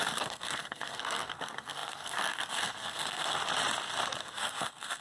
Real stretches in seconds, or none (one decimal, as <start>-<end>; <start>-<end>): 3.4-4.2